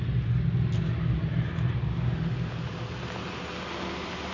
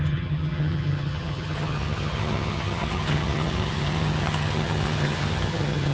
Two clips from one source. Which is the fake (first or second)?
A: second